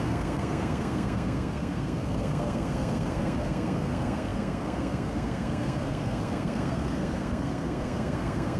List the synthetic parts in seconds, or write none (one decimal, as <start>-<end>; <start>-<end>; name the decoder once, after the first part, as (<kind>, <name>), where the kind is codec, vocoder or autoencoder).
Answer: 0.0-8.6 (codec, SNAC)